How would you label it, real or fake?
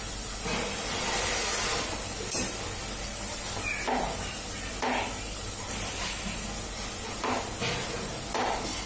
real